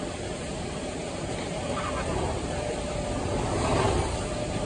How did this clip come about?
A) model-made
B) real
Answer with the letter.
A